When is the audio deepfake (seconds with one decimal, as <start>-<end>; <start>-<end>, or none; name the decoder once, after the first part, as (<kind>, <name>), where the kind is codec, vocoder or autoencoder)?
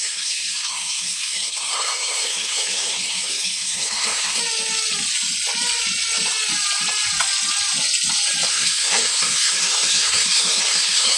0.0-4.4 (codec, SNAC); 8.5-11.2